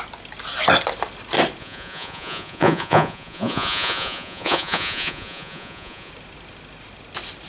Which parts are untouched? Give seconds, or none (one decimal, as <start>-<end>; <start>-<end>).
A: 0.0-1.6; 6.1-7.5